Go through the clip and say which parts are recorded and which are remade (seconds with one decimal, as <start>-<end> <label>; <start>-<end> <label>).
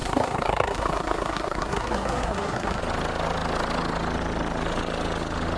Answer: 0.0-2.8 remade; 2.8-5.6 recorded